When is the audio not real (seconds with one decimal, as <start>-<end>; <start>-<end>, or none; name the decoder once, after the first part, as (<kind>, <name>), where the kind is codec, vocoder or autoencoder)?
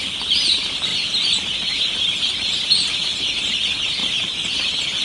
none